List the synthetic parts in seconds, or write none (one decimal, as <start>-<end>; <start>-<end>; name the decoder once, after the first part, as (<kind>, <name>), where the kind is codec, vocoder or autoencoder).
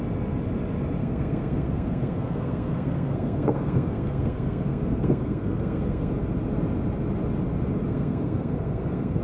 1.0-6.1 (codec, SNAC); 7.9-9.2